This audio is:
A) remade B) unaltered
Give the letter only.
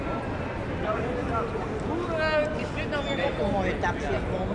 B